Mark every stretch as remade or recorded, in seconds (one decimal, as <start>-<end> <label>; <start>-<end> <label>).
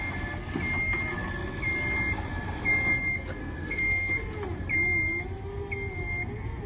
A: 0.0-3.4 recorded; 3.4-4.1 remade; 4.1-6.7 recorded